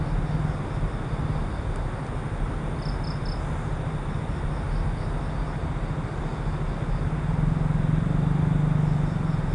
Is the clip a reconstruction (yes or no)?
no